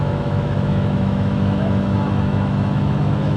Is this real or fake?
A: fake